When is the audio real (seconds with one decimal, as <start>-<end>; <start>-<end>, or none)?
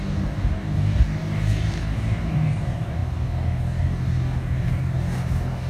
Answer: none